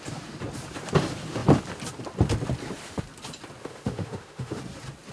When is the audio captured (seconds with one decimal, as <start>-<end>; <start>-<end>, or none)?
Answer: 0.0-3.6; 4.6-5.1